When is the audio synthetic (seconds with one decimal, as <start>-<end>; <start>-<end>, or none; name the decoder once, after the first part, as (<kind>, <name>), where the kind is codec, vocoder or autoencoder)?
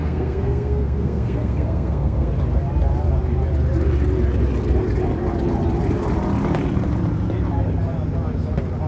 0.0-2.3 (codec, SNAC)